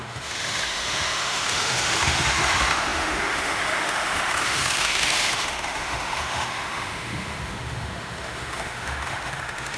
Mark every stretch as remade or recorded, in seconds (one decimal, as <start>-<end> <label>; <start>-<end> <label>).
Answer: 0.0-9.8 remade

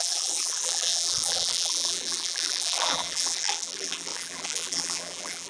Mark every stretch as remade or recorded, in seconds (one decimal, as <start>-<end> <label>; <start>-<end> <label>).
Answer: 0.0-5.5 remade

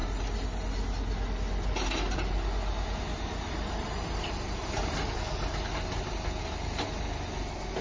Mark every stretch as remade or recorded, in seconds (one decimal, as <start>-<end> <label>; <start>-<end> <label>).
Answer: 0.0-3.5 recorded; 3.5-4.6 remade; 4.6-7.8 recorded

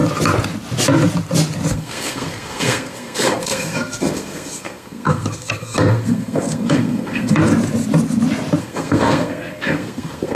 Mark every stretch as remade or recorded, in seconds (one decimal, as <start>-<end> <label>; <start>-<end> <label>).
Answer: 0.0-1.7 recorded; 1.7-7.4 remade; 7.4-8.6 recorded; 8.6-10.4 remade

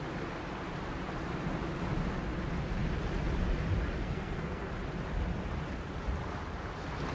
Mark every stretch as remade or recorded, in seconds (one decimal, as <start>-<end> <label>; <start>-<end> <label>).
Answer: 0.0-4.0 recorded; 4.0-4.7 remade; 4.7-7.1 recorded

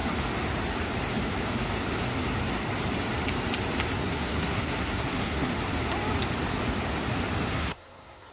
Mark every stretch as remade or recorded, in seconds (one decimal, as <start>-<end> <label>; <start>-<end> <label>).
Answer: 0.0-4.0 recorded; 4.0-5.5 remade; 5.5-7.5 recorded; 7.5-8.3 remade

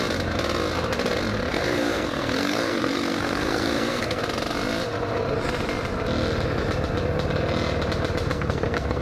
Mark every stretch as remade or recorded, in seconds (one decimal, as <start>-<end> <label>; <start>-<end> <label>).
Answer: 0.0-1.5 recorded; 1.5-4.2 remade; 4.2-8.3 recorded; 8.3-9.0 remade